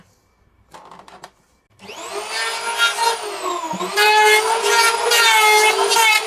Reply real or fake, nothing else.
real